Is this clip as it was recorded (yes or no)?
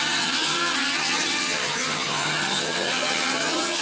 no